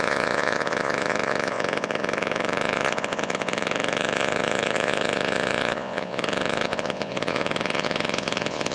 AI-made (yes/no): yes